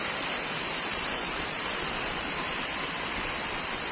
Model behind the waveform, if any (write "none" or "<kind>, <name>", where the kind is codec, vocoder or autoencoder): none